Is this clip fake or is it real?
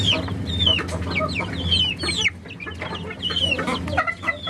real